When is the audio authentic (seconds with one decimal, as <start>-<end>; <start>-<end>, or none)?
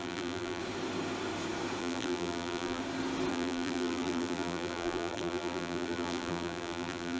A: 0.6-1.8; 2.8-3.3